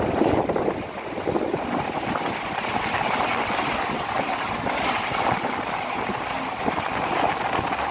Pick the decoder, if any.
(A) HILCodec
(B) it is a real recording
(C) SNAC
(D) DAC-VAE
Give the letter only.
B